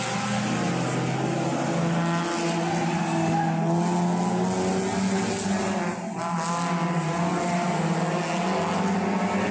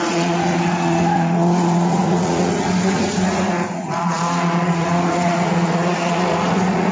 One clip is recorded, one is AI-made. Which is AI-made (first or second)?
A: second